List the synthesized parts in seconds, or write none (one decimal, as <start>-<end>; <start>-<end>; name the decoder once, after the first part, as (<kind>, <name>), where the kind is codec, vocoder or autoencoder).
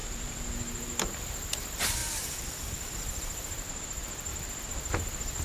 1.2-5.4 (vocoder, BigVGAN v2)